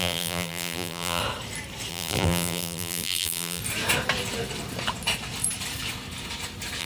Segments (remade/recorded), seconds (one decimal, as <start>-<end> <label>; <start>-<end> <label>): 0.0-1.2 remade; 1.2-1.9 recorded; 1.9-3.6 remade; 3.6-6.8 recorded